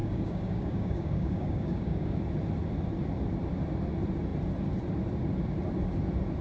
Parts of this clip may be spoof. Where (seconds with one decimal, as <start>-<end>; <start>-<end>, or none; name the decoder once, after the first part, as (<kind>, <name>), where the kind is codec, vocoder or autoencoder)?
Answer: 0.0-2.2 (codec, DAC)